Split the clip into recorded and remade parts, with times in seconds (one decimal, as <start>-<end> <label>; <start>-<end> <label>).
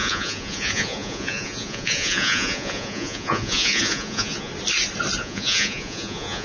0.0-4.5 remade; 4.5-5.2 recorded; 5.2-6.4 remade